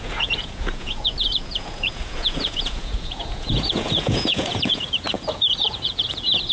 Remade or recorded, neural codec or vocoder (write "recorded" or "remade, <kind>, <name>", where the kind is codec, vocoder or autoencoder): remade, vocoder, Vocos